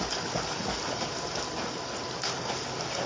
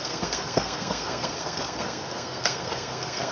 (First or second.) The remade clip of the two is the second